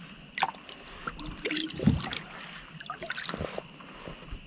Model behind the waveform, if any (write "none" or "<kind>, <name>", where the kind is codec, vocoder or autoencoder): none